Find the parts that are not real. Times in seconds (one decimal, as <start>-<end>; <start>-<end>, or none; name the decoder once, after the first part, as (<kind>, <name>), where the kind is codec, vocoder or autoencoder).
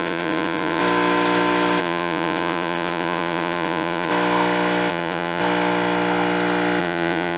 0.0-0.8 (vocoder, Vocos); 1.8-4.1; 4.9-5.4; 6.8-7.4